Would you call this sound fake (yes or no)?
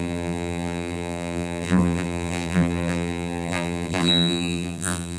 yes